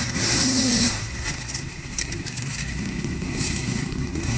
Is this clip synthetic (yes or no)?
yes